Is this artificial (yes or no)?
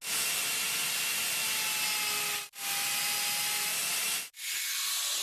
no